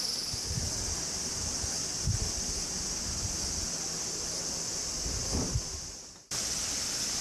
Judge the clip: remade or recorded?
recorded